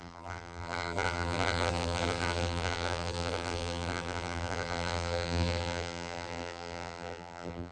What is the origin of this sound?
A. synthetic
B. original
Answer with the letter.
A